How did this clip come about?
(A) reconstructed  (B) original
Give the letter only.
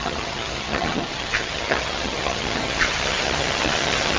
A